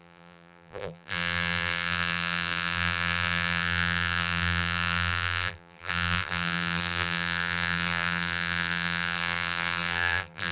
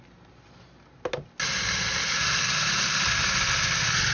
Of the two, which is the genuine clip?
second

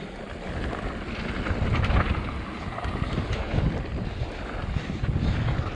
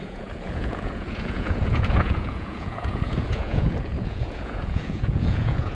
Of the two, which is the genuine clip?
first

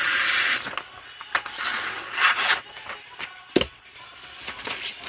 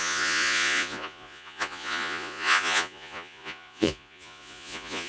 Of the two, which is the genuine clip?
first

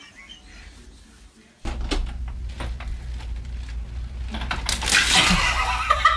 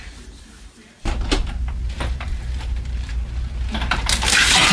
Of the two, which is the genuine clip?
first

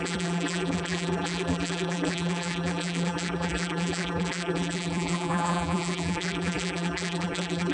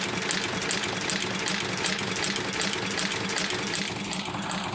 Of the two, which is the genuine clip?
second